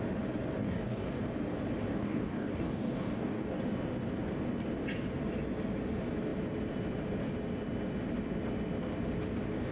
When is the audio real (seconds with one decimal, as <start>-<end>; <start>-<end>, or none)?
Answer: 0.0-0.6; 1.2-1.9; 3.6-9.7